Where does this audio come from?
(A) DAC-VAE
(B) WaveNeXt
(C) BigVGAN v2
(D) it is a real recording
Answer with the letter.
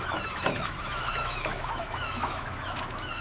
A